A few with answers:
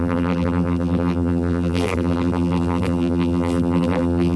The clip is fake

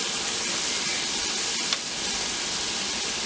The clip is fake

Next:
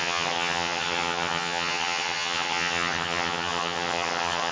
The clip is fake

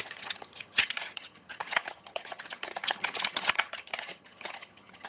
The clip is fake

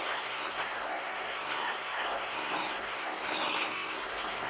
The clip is fake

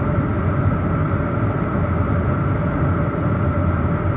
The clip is real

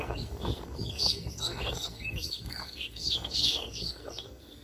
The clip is fake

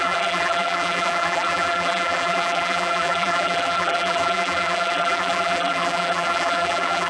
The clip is fake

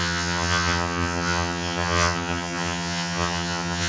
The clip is fake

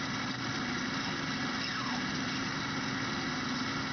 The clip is real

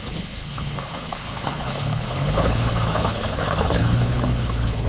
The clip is fake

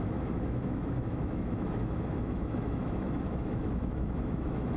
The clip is fake